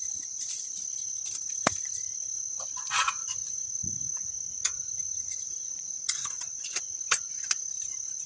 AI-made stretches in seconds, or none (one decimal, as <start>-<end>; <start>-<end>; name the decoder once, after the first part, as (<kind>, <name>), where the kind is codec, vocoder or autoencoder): 3.2-7.3 (vocoder, Vocos)